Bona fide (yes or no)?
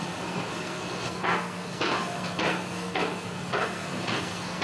no